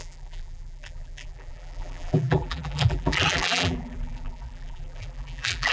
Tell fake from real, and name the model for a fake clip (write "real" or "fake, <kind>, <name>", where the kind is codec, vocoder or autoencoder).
fake, vocoder, BigVGAN v2